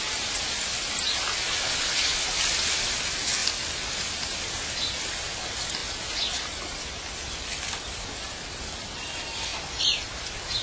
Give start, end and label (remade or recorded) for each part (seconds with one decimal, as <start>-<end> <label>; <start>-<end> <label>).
0.0-10.6 recorded